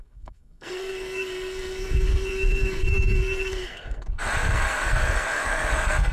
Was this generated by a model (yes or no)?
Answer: yes